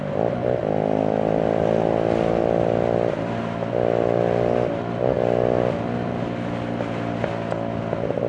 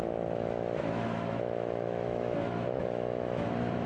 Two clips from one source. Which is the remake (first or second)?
second